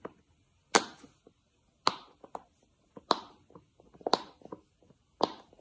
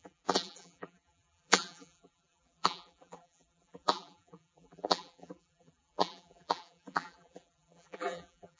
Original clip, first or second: first